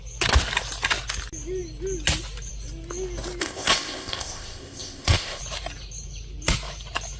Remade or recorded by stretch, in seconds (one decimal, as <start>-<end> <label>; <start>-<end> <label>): 0.0-3.4 recorded; 3.4-5.4 remade; 5.4-7.2 recorded